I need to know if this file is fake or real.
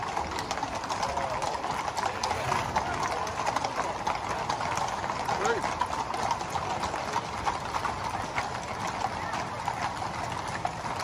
real